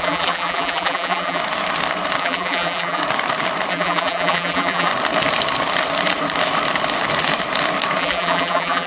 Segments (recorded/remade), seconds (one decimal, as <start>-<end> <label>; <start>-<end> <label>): 0.0-1.4 remade; 1.4-2.2 recorded; 2.2-3.0 remade; 3.0-3.7 recorded; 3.7-4.9 remade; 4.9-8.0 recorded; 8.0-8.9 remade